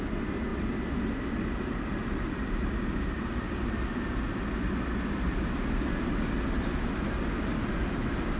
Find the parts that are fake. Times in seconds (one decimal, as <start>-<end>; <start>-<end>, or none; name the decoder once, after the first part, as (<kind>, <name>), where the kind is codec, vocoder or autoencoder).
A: none